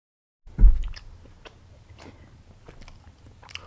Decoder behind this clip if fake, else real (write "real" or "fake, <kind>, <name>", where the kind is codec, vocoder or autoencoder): real